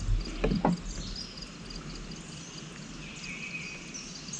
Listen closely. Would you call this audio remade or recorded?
recorded